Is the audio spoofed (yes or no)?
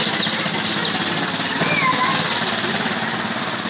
no